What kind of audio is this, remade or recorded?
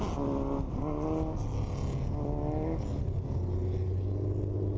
recorded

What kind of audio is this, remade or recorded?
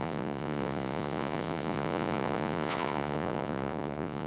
remade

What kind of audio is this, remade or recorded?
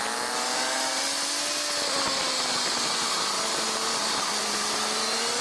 recorded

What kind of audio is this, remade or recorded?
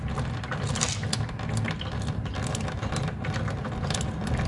remade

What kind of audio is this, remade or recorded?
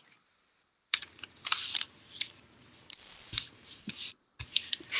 remade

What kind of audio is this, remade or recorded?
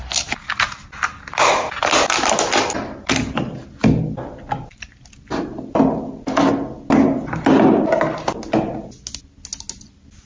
recorded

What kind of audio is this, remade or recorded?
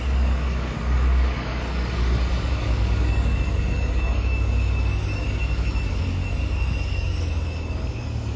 remade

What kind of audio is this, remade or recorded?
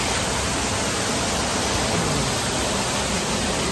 recorded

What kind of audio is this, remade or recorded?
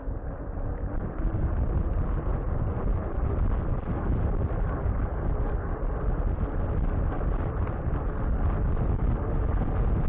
recorded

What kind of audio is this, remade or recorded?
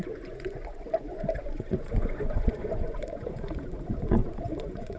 remade